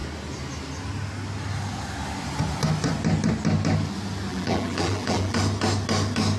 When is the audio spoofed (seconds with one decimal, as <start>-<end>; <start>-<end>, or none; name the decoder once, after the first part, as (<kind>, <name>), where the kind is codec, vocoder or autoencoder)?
4.3-5.4 (vocoder, BigVGAN v2)